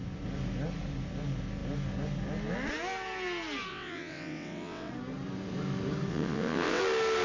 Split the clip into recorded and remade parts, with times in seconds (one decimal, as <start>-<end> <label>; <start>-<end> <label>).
0.0-3.7 recorded; 3.7-4.9 remade; 4.9-6.1 recorded; 6.1-6.8 remade; 6.8-7.2 recorded